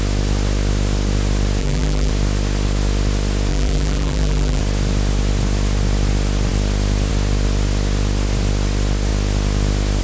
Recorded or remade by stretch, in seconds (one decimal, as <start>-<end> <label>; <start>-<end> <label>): 0.0-1.6 recorded; 1.6-2.1 remade; 2.1-3.5 recorded; 3.5-4.6 remade; 4.6-10.0 recorded